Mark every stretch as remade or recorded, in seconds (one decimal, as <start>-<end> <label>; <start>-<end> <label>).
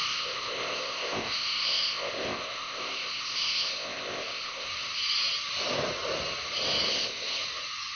0.0-4.7 remade; 4.7-6.9 recorded; 6.9-7.4 remade; 7.4-7.9 recorded